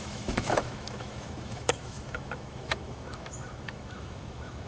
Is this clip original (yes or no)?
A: no